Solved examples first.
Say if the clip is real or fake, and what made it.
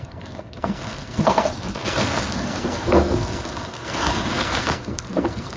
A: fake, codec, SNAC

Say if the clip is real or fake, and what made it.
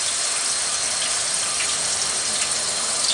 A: real